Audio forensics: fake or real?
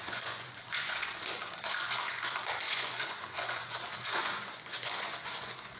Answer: fake